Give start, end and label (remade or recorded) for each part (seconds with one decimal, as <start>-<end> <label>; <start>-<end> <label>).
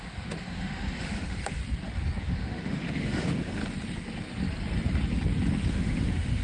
0.0-1.6 remade; 1.6-2.2 recorded; 2.2-3.6 remade; 3.6-5.7 recorded; 5.7-6.4 remade